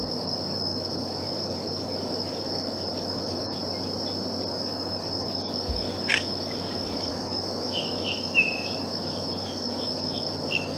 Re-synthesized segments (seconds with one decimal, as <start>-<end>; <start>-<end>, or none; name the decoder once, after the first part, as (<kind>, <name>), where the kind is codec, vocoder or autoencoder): 0.0-3.6 (codec, DAC); 4.5-10.8